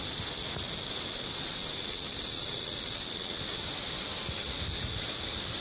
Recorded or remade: recorded